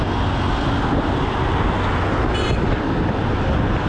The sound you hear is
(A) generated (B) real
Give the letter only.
B